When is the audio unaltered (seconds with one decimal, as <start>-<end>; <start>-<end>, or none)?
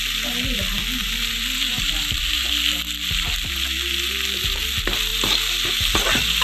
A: 0.0-1.0; 2.5-6.4